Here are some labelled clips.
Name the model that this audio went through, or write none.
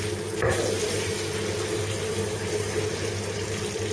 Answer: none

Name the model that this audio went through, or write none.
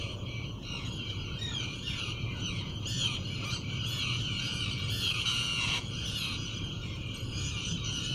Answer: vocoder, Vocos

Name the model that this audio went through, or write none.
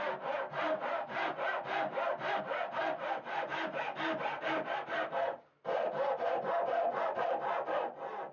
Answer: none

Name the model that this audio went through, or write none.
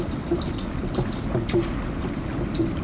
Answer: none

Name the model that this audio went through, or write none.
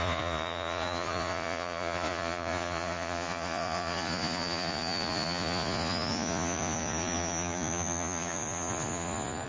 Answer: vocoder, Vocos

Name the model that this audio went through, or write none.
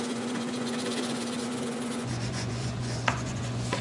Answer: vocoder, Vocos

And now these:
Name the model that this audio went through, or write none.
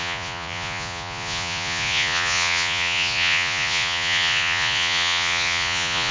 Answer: vocoder, Vocos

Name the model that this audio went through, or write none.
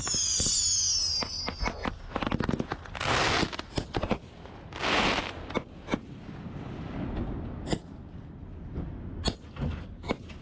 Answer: none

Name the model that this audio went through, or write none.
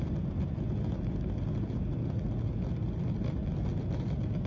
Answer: none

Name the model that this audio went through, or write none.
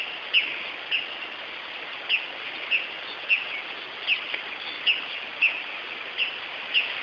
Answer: none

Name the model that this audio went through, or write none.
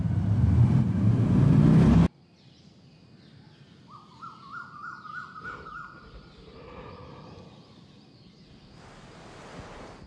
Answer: none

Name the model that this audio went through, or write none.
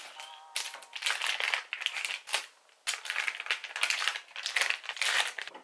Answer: none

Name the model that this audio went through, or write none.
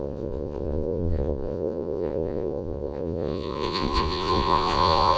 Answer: vocoder, Vocos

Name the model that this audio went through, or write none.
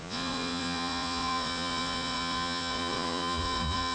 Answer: vocoder, Vocos